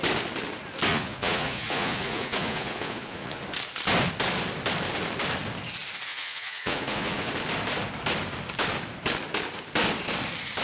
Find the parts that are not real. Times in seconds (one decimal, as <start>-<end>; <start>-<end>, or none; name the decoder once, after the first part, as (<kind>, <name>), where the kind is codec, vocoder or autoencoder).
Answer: 0.9-3.4 (vocoder, Vocos); 6.1-7.3